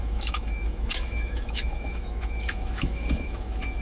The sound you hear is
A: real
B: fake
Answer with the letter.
B